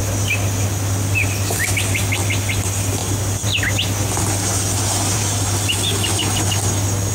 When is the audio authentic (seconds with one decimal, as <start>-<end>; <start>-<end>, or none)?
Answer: 0.0-7.1